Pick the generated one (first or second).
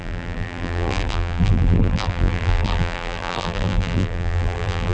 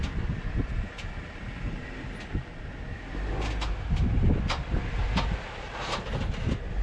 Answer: first